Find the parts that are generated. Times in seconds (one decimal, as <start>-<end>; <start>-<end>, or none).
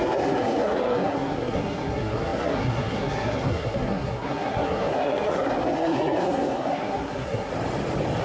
0.0-7.5